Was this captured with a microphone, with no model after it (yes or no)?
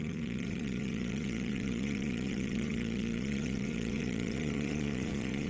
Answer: no